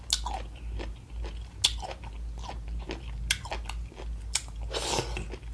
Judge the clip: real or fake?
real